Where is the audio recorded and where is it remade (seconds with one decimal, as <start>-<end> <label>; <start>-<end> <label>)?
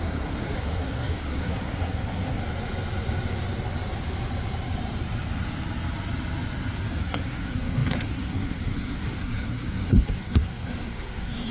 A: 0.0-2.4 remade; 2.4-7.0 recorded; 7.0-11.5 remade